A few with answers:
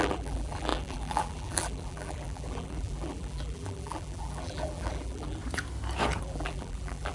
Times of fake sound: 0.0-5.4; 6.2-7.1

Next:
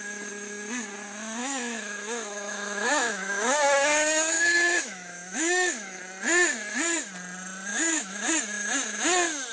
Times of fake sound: 1.4-6.0; 7.7-8.3

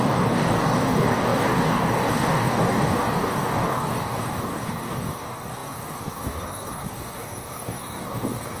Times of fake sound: 0.0-8.6